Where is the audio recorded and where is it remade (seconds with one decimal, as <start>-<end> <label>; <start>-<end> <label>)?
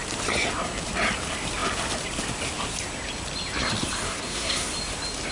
0.0-4.0 recorded; 4.0-4.7 remade; 4.7-5.3 recorded